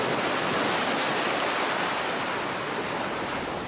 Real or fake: real